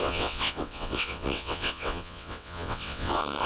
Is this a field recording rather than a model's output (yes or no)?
no